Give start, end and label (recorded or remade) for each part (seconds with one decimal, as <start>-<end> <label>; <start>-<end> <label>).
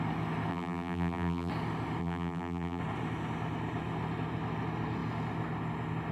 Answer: 0.0-0.5 recorded; 0.5-1.5 remade; 1.5-2.0 recorded; 2.0-2.8 remade; 2.8-6.1 recorded